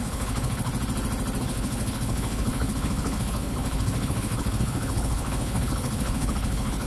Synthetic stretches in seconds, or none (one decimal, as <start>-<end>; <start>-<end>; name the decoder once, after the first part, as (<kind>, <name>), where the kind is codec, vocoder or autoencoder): 0.0-0.7 (codec, HILCodec); 1.4-6.9